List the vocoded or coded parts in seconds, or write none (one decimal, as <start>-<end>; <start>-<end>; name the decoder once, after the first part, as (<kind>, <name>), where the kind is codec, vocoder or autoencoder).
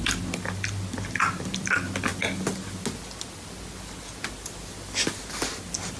none